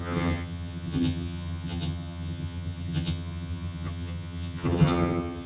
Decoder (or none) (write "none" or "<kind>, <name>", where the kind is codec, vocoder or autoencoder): vocoder, HiFi-GAN